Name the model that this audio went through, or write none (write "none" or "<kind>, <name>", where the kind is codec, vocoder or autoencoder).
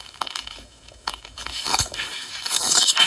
codec, DAC